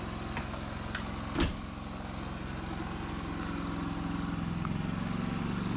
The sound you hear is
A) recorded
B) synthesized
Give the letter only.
A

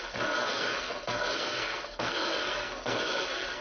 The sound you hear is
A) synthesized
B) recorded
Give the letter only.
A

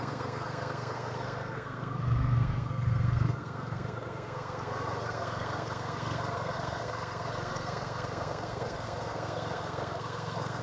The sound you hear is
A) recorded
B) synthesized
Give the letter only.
B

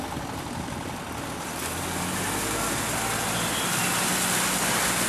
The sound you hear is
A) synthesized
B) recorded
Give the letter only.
B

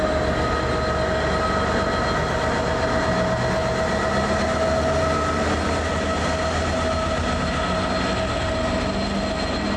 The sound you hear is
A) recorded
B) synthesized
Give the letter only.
A